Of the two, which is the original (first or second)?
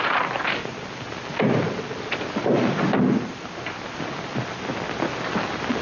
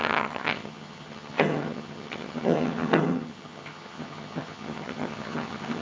first